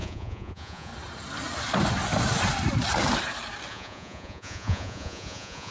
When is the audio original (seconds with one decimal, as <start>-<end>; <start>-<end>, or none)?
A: 0.9-3.7